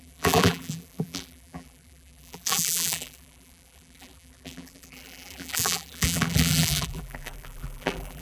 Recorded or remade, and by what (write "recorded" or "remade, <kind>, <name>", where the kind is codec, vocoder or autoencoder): remade, vocoder, BigVGAN v2